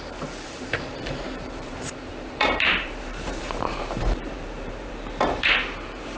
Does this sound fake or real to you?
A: fake